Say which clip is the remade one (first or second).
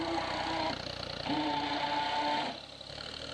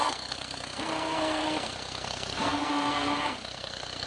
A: second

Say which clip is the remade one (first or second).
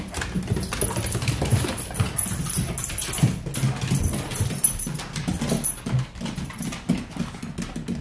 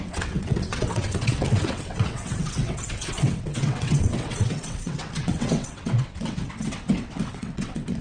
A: second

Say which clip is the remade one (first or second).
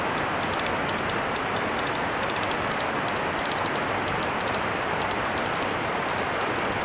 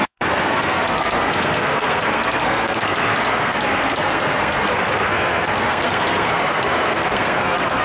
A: second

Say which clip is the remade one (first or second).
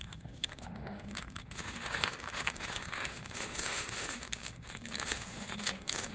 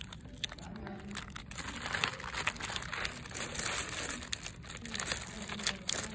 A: first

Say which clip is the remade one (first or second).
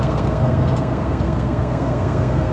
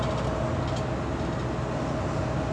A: first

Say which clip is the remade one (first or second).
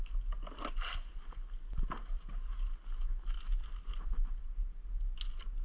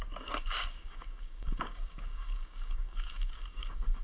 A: second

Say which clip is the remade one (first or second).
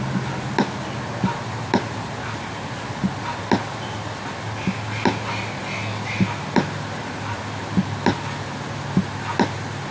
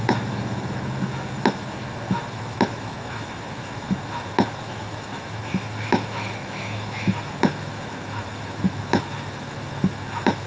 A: second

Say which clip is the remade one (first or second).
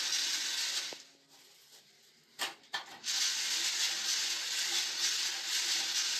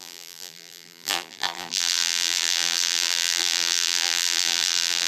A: second